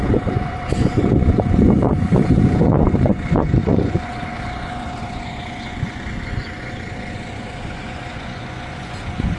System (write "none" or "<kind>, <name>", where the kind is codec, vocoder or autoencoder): vocoder, Vocos